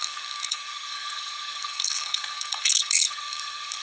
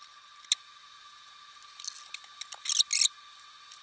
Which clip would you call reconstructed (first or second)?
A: first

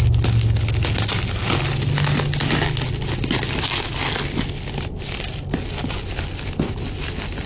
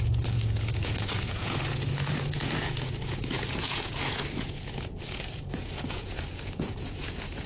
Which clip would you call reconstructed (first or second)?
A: second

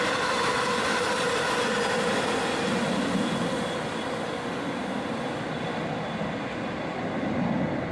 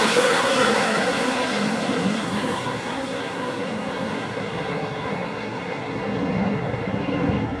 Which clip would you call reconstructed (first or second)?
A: second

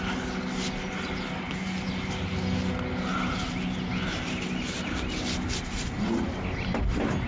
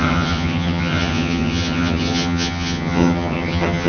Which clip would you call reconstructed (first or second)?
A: second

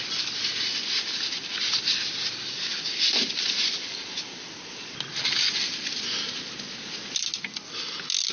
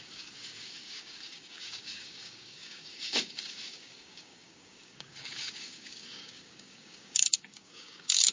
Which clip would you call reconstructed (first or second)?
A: second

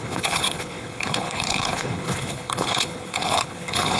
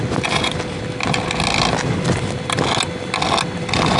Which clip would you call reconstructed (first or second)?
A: first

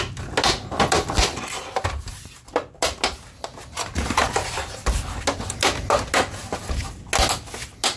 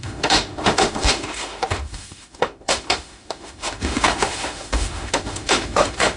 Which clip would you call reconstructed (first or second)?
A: second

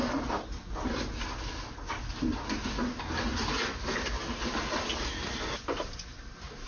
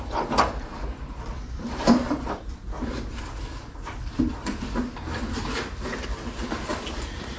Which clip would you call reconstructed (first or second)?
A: second